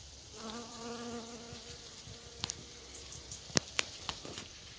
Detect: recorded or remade remade